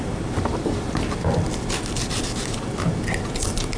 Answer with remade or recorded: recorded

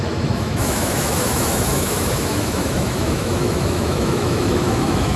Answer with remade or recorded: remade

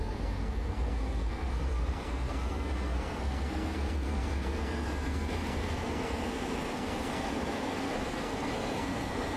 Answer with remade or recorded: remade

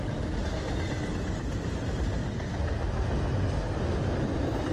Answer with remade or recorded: recorded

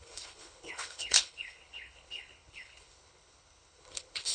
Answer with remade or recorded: remade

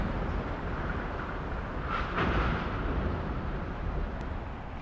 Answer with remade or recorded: recorded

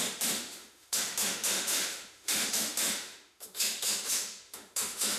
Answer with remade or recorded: remade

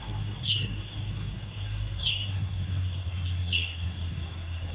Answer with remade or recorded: remade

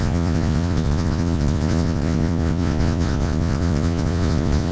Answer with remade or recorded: remade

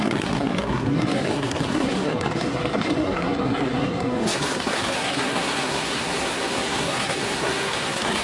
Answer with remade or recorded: remade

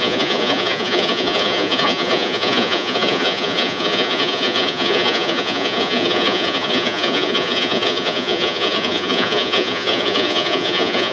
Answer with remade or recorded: remade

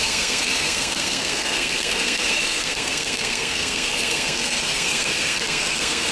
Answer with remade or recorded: remade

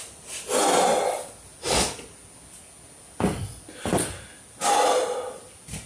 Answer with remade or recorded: recorded